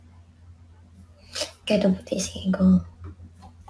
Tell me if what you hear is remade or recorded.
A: recorded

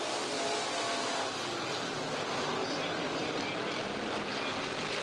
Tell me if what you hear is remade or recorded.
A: recorded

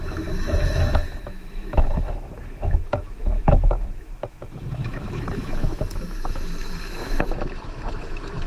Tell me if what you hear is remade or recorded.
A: remade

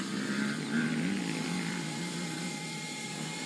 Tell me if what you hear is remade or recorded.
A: remade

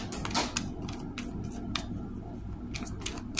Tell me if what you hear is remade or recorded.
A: recorded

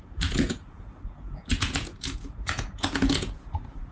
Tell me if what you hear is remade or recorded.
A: remade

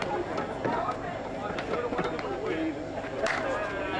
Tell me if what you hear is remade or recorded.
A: recorded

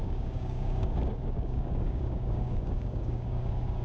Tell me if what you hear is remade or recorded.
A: remade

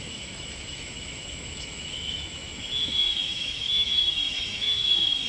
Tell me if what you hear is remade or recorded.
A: remade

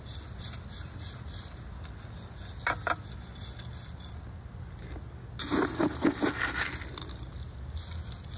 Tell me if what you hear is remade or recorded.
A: recorded